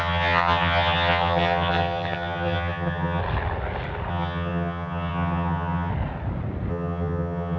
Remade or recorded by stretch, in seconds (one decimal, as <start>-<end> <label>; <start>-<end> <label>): 0.0-3.2 remade; 3.2-4.1 recorded; 4.1-5.9 remade; 5.9-6.7 recorded; 6.7-7.6 remade